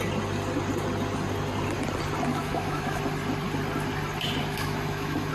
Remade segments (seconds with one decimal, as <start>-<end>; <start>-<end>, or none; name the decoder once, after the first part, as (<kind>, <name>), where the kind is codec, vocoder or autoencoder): 2.3-3.0 (autoencoder, DAC-VAE); 4.4-5.3